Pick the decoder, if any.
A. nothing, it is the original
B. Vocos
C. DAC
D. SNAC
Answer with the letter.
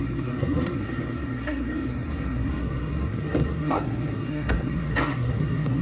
D